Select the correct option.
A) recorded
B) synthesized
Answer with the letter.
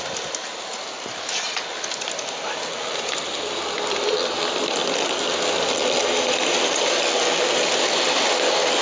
A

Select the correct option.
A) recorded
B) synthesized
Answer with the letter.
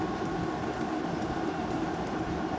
A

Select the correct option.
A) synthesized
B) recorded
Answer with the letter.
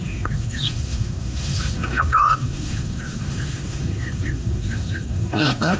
A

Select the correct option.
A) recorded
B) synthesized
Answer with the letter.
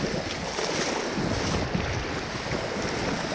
A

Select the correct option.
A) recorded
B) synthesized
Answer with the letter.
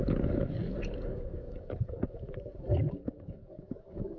B